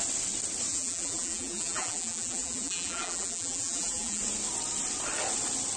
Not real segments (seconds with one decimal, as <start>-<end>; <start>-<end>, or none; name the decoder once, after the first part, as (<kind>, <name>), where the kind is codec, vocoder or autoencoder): 0.7-4.2 (vocoder, BigVGAN v2)